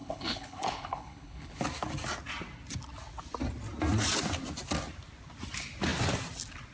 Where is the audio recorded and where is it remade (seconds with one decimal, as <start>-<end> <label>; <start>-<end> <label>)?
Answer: 0.0-1.6 remade; 1.6-6.7 recorded